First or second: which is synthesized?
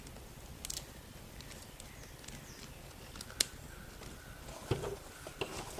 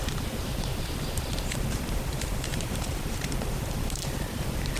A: second